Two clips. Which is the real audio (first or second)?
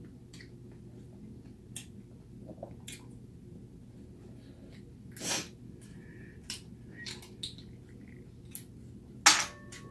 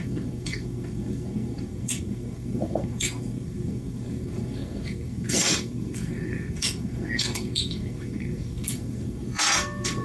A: first